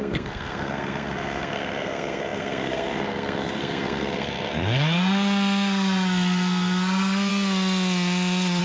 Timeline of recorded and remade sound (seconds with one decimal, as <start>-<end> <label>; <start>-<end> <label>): 0.0-7.3 remade; 7.3-8.6 recorded